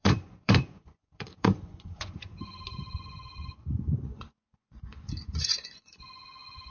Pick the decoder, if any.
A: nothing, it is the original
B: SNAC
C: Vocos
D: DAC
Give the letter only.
C